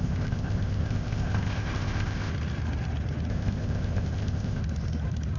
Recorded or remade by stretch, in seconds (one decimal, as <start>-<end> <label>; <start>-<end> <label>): 0.0-2.3 remade; 2.3-3.3 recorded; 3.3-4.6 remade; 4.6-5.4 recorded